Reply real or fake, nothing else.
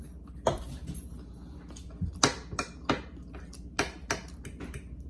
real